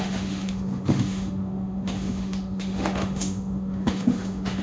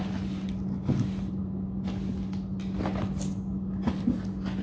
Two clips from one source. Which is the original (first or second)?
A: second